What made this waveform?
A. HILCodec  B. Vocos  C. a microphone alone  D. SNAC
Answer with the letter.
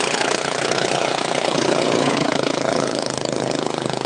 A